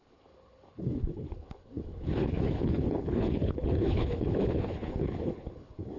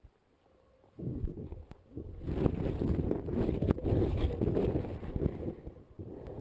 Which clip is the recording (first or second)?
second